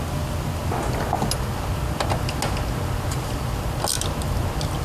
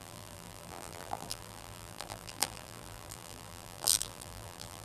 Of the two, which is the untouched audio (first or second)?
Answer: first